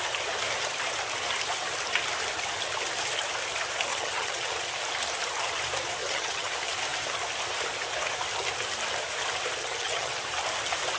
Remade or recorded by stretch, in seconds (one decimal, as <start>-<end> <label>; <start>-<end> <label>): 0.0-3.9 recorded; 3.9-4.5 remade; 4.5-6.0 recorded; 6.0-6.5 remade; 6.5-9.6 recorded; 9.6-10.1 remade; 10.1-11.0 recorded